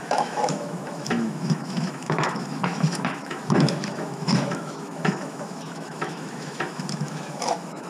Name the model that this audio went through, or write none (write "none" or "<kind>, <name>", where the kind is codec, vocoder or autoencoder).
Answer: autoencoder, DAC-VAE